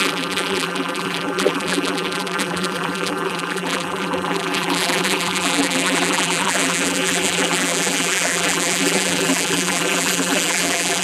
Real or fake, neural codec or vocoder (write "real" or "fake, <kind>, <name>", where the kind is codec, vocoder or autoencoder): fake, vocoder, BigVGAN v2